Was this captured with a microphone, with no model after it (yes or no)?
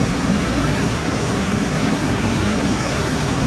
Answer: no